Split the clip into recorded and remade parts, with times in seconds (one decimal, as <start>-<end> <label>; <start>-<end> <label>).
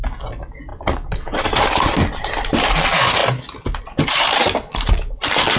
0.0-5.6 recorded